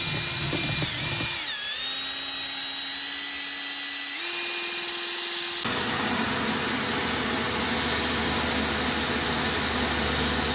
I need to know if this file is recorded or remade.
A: recorded